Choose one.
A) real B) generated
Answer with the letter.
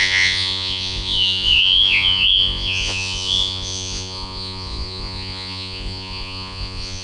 B